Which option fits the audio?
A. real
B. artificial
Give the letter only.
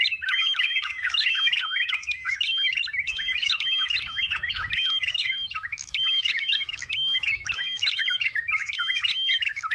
B